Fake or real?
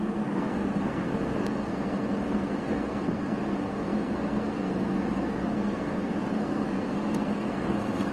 fake